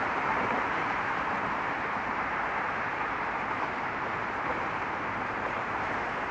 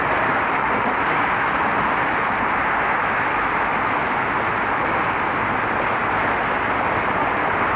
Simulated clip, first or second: first